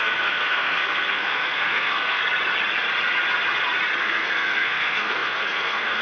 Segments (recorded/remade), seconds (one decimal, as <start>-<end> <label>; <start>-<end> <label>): 0.0-2.2 remade; 2.2-4.0 recorded; 4.0-6.0 remade